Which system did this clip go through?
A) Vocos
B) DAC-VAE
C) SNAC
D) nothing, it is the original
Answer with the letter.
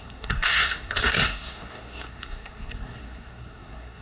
C